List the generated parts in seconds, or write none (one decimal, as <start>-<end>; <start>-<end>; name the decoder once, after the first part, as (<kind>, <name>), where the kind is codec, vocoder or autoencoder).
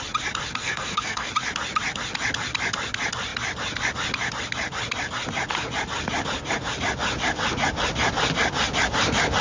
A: 0.6-1.3 (codec, SNAC)